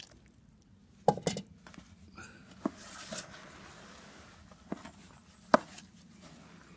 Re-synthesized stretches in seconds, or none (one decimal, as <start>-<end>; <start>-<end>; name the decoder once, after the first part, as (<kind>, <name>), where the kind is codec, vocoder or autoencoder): none